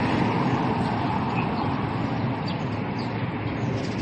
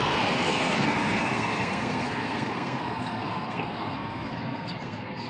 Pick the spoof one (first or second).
second